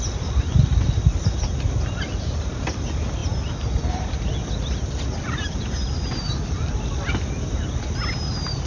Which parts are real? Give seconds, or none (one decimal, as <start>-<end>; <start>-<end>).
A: 0.0-8.7